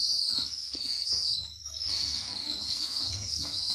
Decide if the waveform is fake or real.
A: fake